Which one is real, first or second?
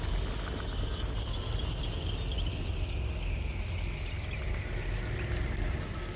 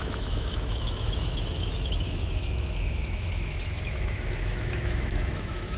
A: first